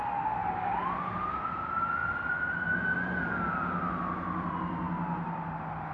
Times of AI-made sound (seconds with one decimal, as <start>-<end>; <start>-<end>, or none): none